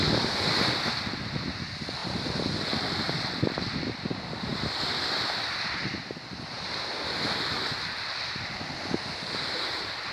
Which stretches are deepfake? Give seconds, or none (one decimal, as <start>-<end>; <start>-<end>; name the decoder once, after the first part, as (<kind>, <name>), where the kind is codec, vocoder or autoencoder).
2.0-2.6 (vocoder, BigVGAN v2); 4.5-6.9